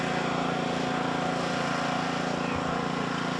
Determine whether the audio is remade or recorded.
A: recorded